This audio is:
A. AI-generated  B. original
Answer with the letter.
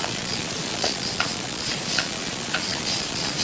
A